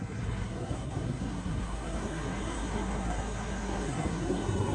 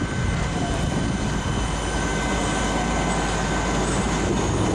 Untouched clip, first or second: second